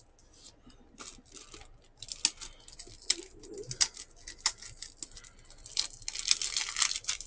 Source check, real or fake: real